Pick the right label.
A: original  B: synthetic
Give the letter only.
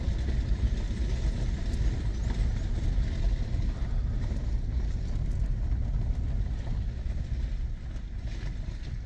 A